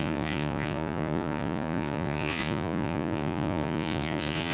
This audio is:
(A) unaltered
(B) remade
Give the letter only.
B